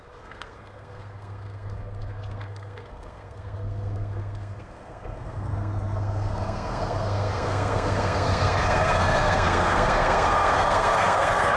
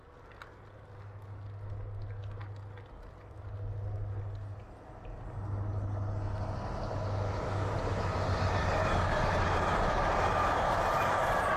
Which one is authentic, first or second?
second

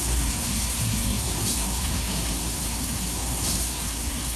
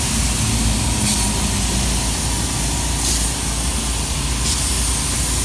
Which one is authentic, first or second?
second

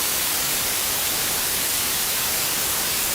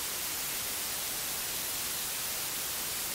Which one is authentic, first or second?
second